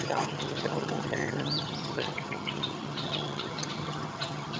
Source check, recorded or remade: remade